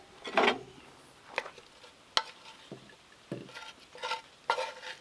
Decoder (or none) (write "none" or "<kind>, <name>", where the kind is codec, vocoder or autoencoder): none